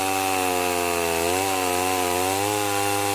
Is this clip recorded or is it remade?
recorded